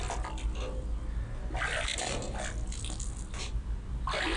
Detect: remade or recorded recorded